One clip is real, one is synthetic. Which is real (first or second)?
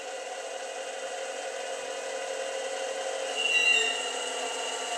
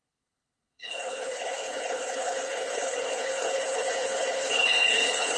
first